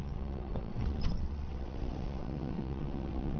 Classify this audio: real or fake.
fake